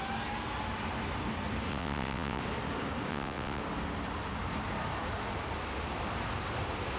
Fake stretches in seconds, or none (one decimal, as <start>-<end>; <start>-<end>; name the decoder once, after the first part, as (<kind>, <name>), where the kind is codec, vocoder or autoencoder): 1.7-2.4 (vocoder, WaveNeXt); 3.1-3.6